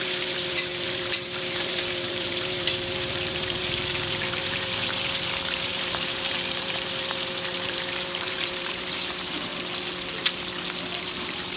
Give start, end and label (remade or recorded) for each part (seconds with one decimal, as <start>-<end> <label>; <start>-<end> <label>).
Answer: 0.0-9.5 remade; 9.5-11.0 recorded; 11.0-11.6 remade